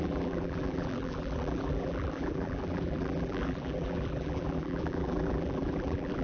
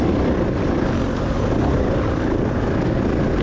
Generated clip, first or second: first